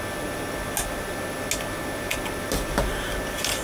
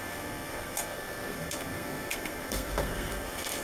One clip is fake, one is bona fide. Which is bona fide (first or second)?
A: first